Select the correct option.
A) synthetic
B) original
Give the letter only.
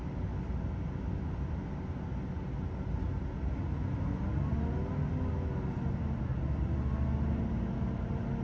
B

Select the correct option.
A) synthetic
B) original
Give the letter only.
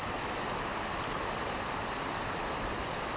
A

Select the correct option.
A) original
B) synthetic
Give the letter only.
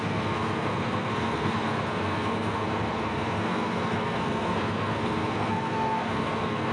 B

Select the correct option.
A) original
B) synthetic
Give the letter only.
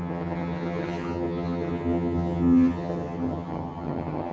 B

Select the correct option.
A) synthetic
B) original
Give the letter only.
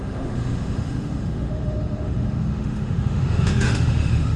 A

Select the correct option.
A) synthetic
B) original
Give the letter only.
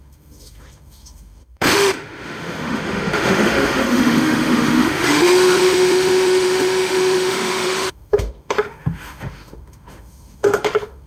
A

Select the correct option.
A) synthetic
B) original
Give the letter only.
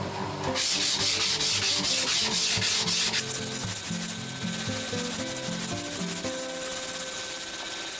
B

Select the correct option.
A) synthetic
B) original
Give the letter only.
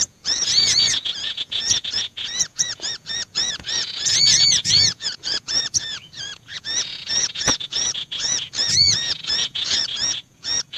A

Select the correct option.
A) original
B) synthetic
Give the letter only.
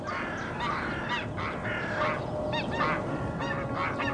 A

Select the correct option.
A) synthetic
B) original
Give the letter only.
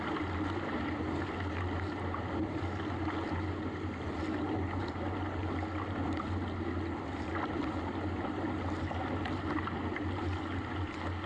B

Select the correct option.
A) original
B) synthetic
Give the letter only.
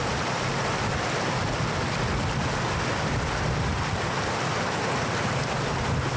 A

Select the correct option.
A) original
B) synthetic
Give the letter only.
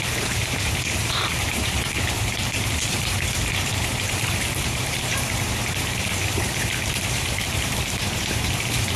B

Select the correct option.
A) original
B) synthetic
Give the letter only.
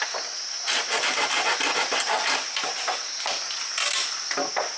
A